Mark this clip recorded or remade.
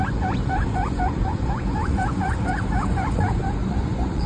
remade